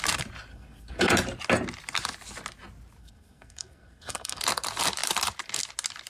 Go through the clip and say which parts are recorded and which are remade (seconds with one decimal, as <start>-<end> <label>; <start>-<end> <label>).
0.0-0.5 recorded; 0.5-1.1 remade; 1.1-3.0 recorded; 3.0-4.4 remade; 4.4-6.1 recorded